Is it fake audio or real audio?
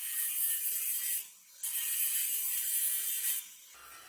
real